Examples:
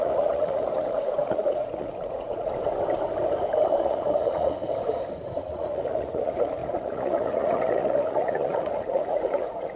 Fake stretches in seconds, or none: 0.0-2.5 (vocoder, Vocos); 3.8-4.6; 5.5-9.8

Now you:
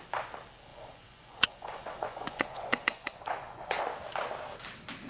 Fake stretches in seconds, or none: 0.7-3.8 (vocoder, Vocos)

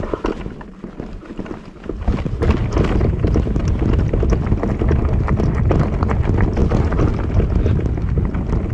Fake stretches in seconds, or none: none

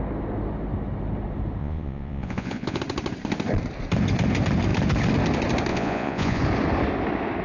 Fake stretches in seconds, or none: 1.6-2.8 (vocoder, Vocos); 5.7-6.4

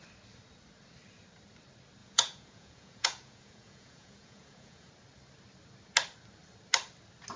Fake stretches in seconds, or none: 2.0-4.9 (vocoder, Vocos)

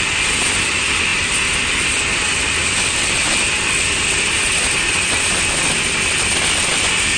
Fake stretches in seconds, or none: none

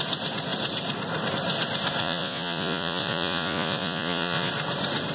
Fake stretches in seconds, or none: 2.0-4.5 (vocoder, Vocos)

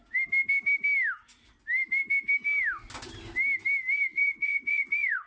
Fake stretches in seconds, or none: 4.1-5.3 (vocoder, Vocos)